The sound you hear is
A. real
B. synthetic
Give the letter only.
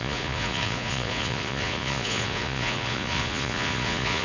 B